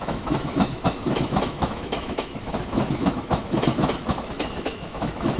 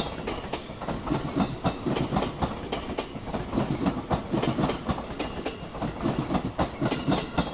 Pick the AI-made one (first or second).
first